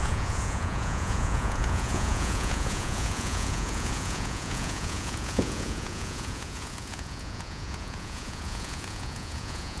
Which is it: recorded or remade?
remade